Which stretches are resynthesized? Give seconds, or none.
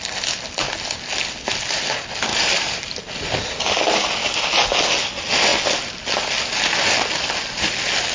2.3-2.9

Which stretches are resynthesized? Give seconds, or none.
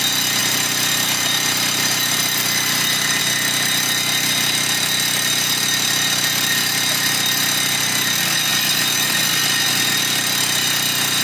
0.4-3.2; 8.5-9.2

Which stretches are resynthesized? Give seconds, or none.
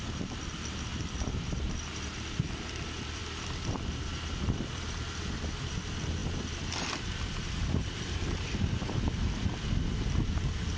0.9-1.7; 3.2-5.7; 6.2-9.1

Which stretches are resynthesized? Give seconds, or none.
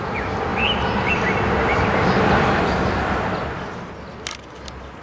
0.5-2.6